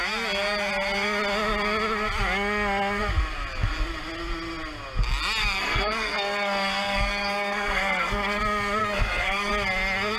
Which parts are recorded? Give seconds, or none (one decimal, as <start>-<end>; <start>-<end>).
0.0-5.4; 8.4-8.8; 9.5-10.2